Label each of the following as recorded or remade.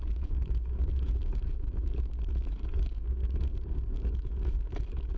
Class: remade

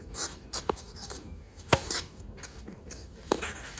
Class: remade